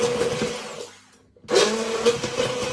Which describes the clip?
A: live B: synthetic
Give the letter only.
A